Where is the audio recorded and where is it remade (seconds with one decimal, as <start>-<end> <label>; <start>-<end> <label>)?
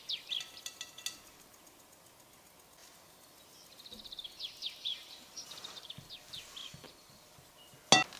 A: 0.0-4.8 recorded; 4.8-5.9 remade; 5.9-6.6 recorded; 6.6-7.1 remade; 7.1-8.2 recorded